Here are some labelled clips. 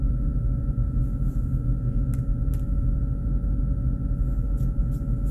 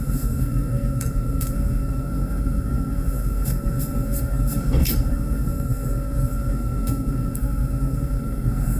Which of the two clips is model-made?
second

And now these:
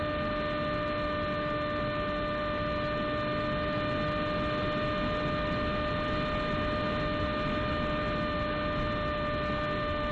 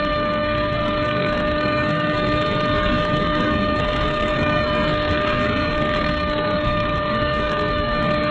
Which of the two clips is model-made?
second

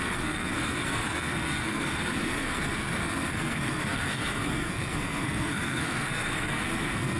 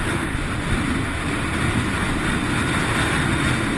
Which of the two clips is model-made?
first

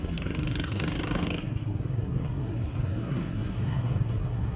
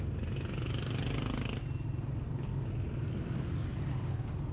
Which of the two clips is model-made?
first